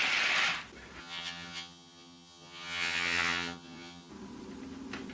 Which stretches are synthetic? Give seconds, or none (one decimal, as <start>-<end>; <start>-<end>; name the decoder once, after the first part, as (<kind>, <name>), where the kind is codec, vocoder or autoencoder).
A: 1.0-4.1 (vocoder, HiFi-GAN)